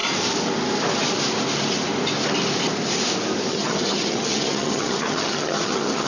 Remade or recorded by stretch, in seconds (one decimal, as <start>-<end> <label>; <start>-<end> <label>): 0.0-3.5 recorded; 3.5-6.1 remade